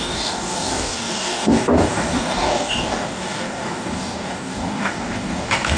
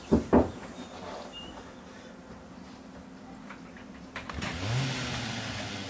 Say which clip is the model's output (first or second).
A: first